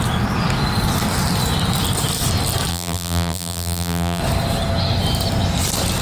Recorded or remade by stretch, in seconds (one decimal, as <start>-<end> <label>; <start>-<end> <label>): 0.0-2.7 recorded; 2.7-4.2 remade; 4.2-6.0 recorded